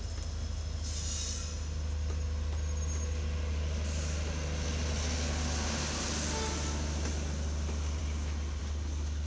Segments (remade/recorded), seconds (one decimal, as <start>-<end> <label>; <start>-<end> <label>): 0.0-9.3 recorded